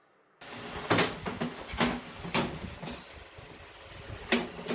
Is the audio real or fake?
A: real